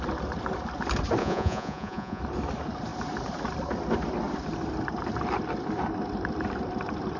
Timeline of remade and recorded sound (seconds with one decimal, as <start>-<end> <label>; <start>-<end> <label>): 0.0-1.2 recorded; 1.2-2.2 remade; 2.2-7.2 recorded